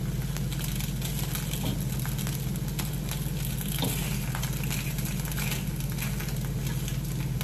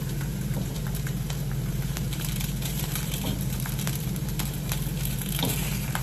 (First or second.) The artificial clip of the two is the second